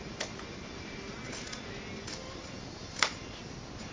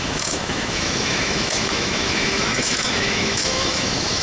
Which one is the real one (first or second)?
first